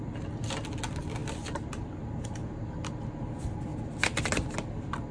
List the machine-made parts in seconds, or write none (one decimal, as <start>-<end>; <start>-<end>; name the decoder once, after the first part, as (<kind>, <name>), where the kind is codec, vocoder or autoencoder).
none